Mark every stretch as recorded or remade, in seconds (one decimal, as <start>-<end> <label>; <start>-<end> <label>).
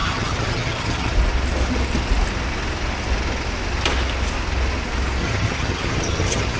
0.0-1.1 remade; 1.1-5.2 recorded; 5.2-6.6 remade